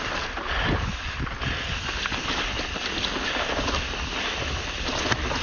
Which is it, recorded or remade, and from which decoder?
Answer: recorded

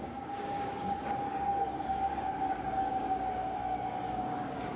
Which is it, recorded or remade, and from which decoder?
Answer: remade, codec, DAC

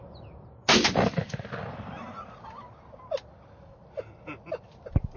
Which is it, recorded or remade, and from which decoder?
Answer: recorded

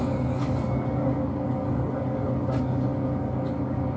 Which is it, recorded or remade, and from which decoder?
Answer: remade, codec, DAC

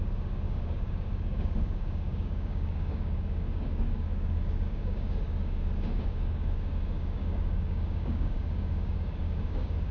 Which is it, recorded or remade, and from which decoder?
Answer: remade, codec, DAC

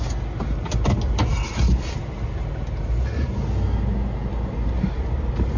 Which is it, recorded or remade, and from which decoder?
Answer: recorded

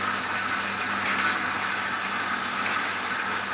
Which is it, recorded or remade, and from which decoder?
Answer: recorded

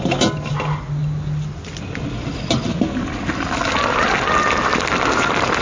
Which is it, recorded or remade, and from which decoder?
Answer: recorded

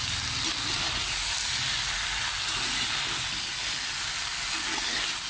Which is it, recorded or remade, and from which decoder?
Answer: recorded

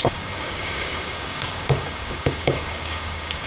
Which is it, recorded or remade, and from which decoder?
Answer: remade, codec, DAC